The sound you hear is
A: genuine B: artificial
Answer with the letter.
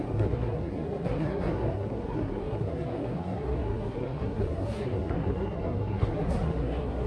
B